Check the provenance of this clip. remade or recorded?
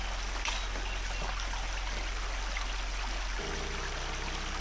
recorded